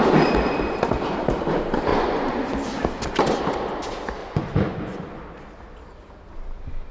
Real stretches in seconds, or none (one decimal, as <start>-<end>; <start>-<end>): 0.0-1.9; 2.5-4.2; 5.2-6.9